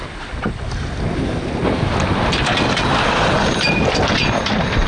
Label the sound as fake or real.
real